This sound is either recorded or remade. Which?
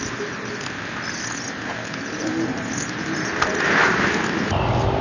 remade